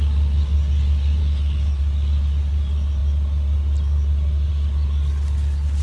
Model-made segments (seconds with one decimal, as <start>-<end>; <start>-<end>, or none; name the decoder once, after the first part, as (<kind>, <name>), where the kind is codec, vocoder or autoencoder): 1.2-1.8 (codec, HILCodec)